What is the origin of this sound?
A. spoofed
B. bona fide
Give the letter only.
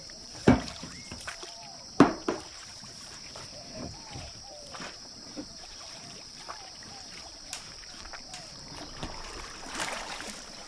A